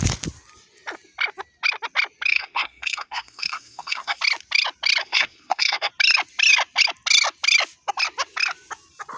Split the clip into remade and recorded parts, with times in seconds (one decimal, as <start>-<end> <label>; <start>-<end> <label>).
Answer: 0.0-2.3 recorded; 2.3-4.2 remade; 4.2-5.0 recorded; 5.0-5.9 remade; 5.9-9.2 recorded